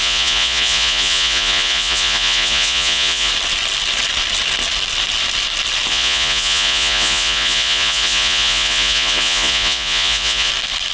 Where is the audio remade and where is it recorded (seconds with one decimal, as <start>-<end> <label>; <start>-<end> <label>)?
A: 0.0-3.3 remade; 3.3-5.9 recorded; 5.9-10.5 remade; 10.5-10.9 recorded